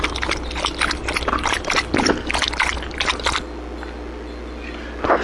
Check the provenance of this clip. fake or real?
real